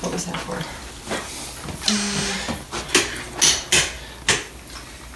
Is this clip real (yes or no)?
yes